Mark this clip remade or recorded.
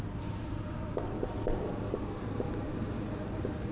remade